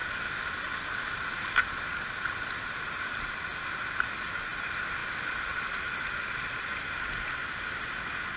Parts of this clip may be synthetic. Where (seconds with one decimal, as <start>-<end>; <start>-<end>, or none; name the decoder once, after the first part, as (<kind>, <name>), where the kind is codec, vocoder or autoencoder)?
none